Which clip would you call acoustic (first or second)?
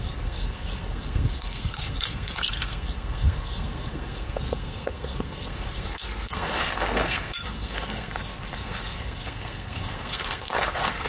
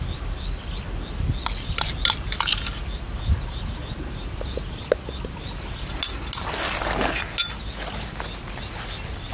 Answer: second